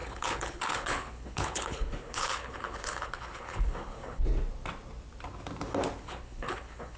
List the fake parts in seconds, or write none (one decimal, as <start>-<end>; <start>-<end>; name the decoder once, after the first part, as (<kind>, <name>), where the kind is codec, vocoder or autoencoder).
0.0-4.2 (codec, HILCodec); 6.0-7.0